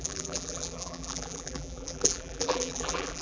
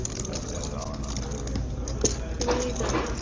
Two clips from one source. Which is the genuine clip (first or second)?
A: second